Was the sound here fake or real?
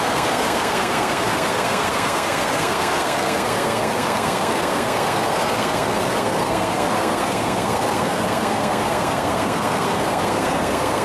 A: fake